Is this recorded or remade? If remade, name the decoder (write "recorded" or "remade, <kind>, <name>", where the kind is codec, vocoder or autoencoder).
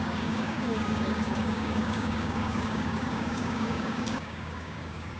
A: remade, codec, DAC